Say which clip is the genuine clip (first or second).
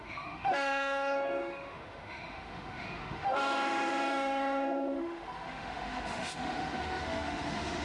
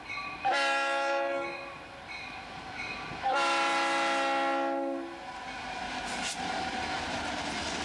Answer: second